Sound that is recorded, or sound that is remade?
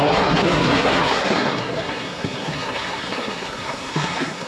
remade